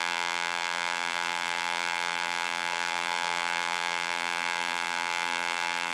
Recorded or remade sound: remade